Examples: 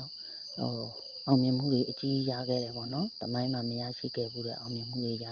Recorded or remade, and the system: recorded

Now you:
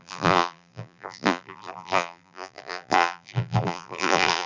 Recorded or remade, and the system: remade, vocoder, BigVGAN v2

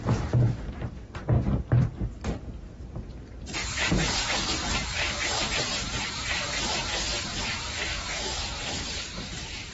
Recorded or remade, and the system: remade, vocoder, BigVGAN v2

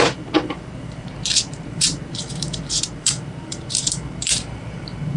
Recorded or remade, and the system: remade, vocoder, BigVGAN v2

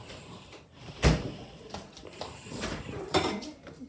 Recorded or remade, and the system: remade, vocoder, BigVGAN v2